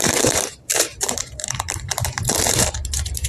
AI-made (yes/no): yes